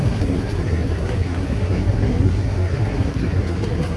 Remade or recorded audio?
remade